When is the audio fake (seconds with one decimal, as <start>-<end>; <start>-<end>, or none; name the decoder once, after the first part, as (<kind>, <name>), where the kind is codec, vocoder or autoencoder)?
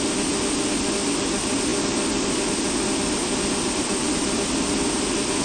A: none